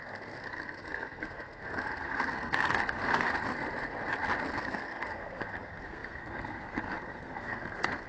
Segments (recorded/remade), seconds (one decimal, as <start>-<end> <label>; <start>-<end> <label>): 0.0-3.3 remade; 3.3-4.6 recorded; 4.6-8.1 remade